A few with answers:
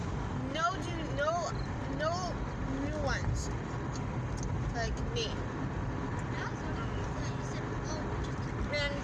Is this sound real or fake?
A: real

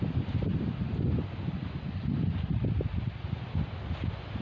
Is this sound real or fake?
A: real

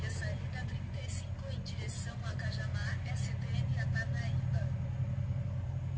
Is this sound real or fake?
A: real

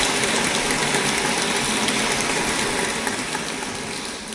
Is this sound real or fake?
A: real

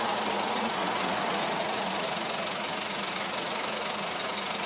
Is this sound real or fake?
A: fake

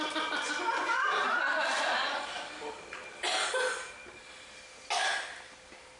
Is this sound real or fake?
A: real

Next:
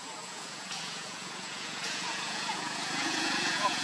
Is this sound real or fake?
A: fake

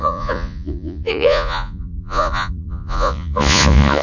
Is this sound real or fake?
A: fake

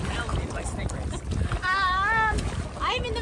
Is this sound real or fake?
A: real